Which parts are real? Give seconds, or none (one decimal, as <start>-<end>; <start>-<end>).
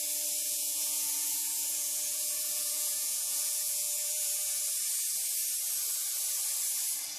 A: 0.0-0.4; 4.6-7.2